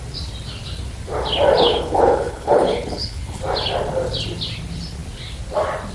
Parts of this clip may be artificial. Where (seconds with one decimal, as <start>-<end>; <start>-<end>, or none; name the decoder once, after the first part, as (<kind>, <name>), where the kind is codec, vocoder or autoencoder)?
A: 1.6-3.4 (codec, HILCodec)